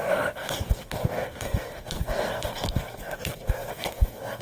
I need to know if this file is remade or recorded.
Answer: remade